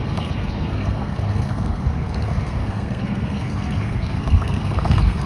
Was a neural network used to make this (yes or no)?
yes